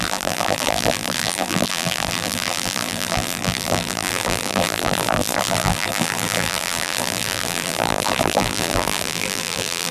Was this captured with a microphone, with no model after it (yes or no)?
no